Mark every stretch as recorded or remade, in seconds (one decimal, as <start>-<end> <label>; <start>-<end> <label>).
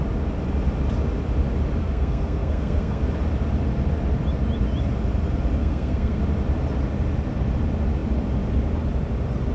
0.0-1.8 recorded; 1.8-3.0 remade; 3.0-5.6 recorded; 5.6-6.2 remade; 6.2-9.5 recorded